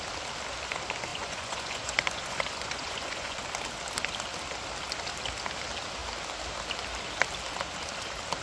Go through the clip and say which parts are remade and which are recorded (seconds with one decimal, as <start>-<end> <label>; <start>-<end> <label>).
0.0-1.1 recorded; 1.1-3.4 remade; 3.4-8.4 recorded